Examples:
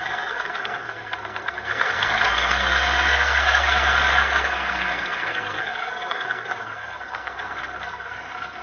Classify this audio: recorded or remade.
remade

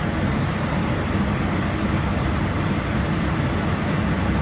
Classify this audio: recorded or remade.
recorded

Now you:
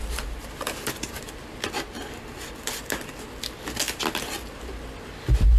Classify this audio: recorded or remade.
recorded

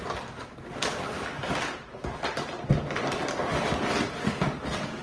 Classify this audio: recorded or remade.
recorded